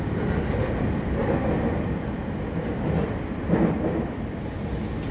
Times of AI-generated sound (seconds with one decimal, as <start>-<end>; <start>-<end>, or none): none